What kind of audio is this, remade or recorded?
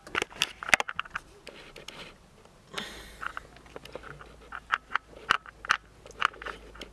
recorded